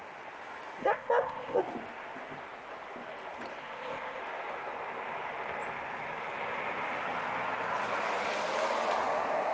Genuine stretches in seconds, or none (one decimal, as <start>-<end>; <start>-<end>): 0.0-0.8; 1.6-3.6; 4.2-9.5